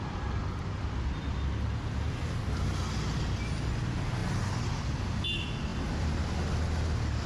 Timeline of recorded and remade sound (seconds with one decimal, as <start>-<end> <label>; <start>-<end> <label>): 0.0-7.3 recorded